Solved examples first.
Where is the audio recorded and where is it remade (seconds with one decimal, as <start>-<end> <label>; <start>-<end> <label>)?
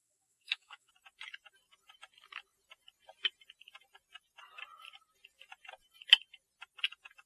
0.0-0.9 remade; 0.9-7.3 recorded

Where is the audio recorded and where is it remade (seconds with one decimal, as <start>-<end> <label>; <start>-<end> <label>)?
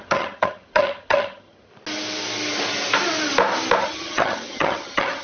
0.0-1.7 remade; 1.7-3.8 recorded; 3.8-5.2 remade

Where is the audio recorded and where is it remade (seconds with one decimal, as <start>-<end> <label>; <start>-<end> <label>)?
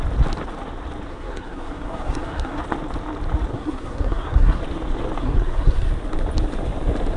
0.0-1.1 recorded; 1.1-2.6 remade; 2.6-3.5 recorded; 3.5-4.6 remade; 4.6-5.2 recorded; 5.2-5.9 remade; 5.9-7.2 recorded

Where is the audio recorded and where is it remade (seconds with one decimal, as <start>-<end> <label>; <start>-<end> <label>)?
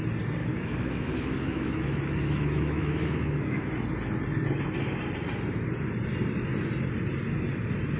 0.0-0.4 recorded; 0.4-3.7 remade; 3.7-8.0 recorded